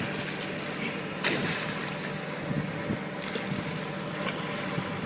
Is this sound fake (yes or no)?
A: no